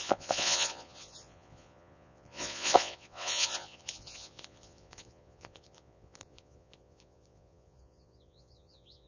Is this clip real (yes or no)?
no